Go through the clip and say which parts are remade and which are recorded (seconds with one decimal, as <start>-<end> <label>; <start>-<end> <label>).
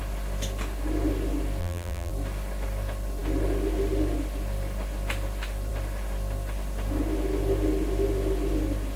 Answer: 0.0-1.6 recorded; 1.6-2.1 remade; 2.1-9.0 recorded